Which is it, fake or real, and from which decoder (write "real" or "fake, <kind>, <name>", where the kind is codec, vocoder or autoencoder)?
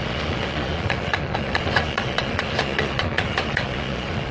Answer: fake, vocoder, Vocos